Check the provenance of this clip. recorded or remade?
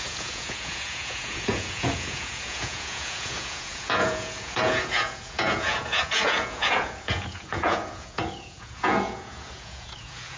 remade